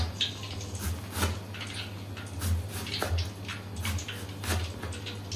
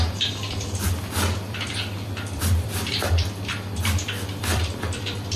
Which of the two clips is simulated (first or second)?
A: second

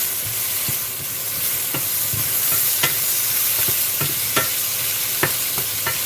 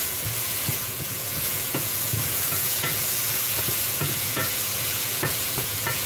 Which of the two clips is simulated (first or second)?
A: second